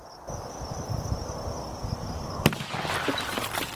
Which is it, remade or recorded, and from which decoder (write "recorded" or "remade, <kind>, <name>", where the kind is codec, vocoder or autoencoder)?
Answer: remade, vocoder, BigVGAN v2